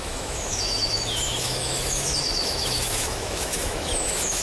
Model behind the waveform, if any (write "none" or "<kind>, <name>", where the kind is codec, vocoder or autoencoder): autoencoder, DAC-VAE